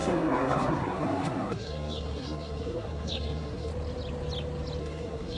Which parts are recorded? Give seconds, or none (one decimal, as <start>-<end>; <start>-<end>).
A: 3.7-4.8